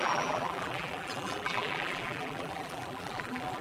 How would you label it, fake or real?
fake